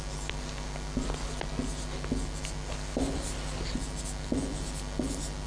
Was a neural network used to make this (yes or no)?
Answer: no